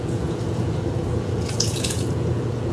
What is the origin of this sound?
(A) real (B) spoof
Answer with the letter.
B